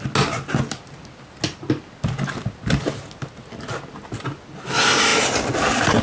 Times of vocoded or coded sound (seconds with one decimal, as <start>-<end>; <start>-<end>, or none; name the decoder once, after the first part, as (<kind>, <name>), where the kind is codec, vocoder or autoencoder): none